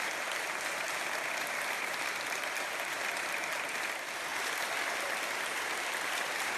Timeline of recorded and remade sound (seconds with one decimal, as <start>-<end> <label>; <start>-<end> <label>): 0.0-6.6 recorded